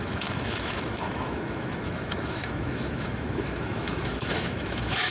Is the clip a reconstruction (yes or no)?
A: yes